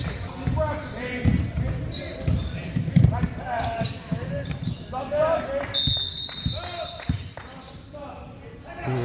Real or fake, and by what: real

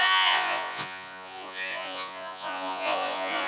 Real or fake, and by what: fake, vocoder, Vocos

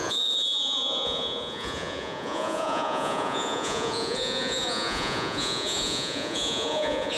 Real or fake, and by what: fake, vocoder, Vocos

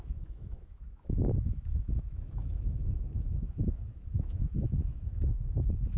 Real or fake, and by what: fake, autoencoder, DAC-VAE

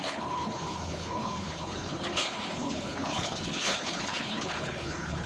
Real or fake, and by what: fake, codec, HILCodec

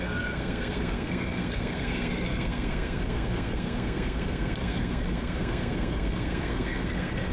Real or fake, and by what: fake, codec, SNAC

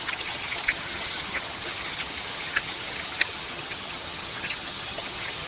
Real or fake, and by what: fake, vocoder, HiFi-GAN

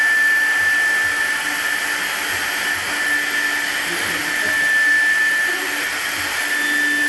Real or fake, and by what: real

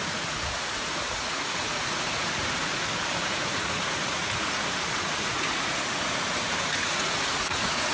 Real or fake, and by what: fake, vocoder, Vocos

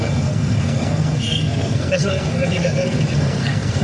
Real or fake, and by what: fake, codec, SNAC